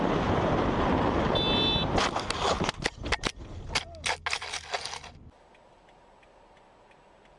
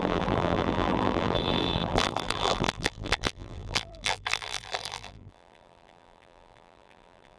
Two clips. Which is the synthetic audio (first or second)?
second